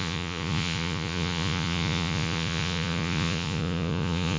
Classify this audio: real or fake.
fake